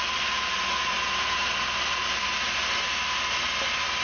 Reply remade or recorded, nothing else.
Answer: recorded